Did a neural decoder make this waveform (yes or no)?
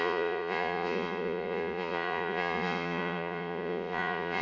yes